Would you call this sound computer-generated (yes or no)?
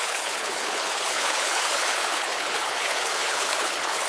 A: yes